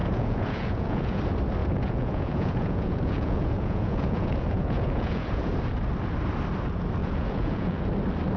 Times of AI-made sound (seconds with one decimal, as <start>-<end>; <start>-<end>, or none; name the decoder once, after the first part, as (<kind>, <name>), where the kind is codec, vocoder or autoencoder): 0.0-1.2 (vocoder, Vocos); 1.6-5.5; 7.0-7.9